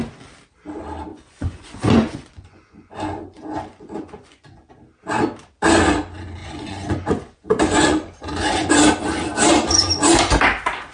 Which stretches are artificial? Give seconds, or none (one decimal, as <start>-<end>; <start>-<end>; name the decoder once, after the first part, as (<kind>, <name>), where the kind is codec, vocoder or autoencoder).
1.1-4.7 (vocoder, Vocos); 6.4-8.7